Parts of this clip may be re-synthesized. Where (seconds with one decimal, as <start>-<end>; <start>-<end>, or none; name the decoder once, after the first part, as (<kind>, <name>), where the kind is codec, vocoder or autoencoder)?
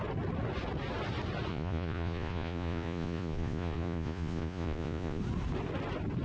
1.5-5.2 (vocoder, Vocos)